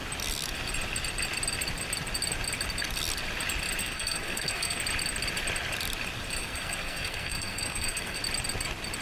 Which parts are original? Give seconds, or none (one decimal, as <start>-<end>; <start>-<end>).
0.0-3.8; 4.8-6.4; 8.2-9.0

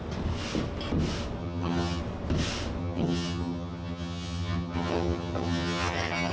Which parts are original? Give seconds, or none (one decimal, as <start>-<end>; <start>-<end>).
0.0-1.4; 2.0-2.8

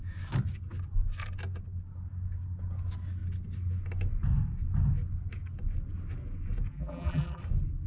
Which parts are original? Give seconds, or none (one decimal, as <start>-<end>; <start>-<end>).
0.0-6.7; 7.4-7.9

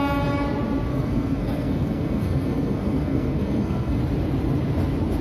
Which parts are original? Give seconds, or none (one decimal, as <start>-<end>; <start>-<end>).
0.0-0.9; 4.0-5.2

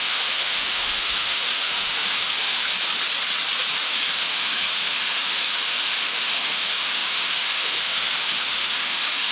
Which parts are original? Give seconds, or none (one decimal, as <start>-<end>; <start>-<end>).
2.7-3.8

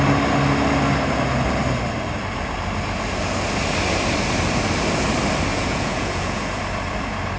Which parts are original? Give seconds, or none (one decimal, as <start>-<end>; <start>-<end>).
0.0-5.5; 6.6-7.4

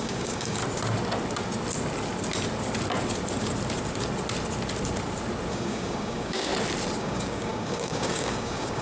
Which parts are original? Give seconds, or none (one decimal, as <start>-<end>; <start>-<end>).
0.6-5.5; 6.5-7.0

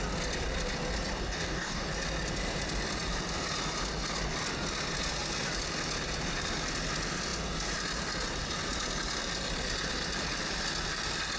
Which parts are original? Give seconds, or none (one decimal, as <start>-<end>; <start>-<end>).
0.0-1.2; 1.9-11.4